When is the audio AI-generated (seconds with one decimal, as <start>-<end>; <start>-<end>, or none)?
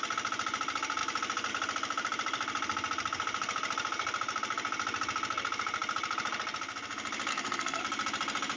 7.3-7.8